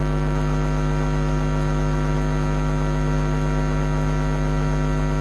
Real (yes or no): yes